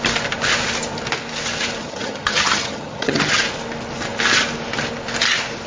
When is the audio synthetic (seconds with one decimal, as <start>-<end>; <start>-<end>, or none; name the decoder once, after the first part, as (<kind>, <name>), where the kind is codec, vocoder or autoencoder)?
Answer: 1.8-3.4 (vocoder, HiFi-GAN)